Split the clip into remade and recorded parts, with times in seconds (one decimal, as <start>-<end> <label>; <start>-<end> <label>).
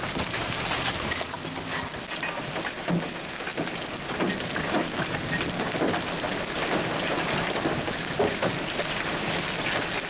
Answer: 0.0-10.1 recorded